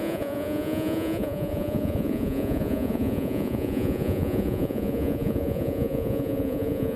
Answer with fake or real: fake